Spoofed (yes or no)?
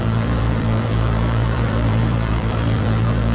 yes